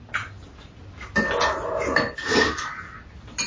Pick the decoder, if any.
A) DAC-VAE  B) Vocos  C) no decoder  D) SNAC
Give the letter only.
C